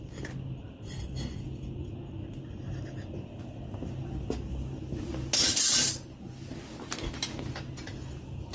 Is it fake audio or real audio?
real